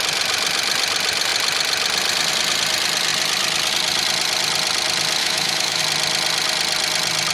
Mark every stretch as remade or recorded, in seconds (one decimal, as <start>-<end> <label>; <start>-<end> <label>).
0.0-5.2 recorded; 5.2-5.8 remade; 5.8-7.3 recorded